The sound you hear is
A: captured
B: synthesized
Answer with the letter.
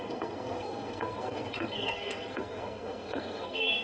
B